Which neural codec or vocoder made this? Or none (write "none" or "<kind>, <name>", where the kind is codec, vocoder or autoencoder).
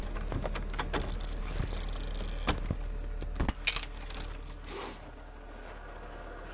none